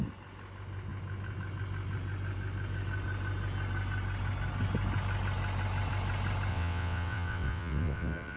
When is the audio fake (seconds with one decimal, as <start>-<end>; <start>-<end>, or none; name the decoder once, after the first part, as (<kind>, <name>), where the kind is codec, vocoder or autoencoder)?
6.5-8.4 (vocoder, WaveNeXt)